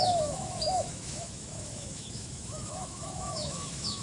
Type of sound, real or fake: fake